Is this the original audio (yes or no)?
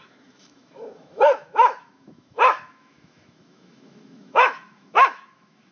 no